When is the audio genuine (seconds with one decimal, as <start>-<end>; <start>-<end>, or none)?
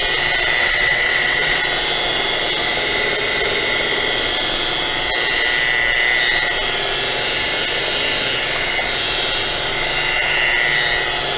0.0-0.6; 1.6-11.4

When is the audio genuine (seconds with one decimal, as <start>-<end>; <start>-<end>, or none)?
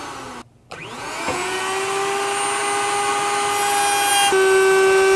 0.0-0.9; 1.6-5.2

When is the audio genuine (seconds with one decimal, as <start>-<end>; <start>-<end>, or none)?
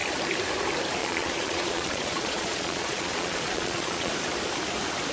0.0-1.0; 4.1-5.1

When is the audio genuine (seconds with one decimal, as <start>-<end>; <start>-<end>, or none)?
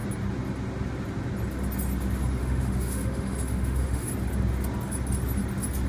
0.0-2.4; 4.1-5.9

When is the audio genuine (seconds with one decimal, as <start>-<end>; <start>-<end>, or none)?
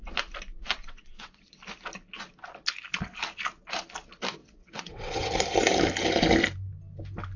0.0-0.8; 1.6-4.4; 5.3-7.4